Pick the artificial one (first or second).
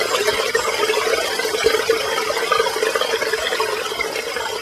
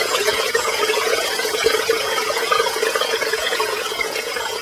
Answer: second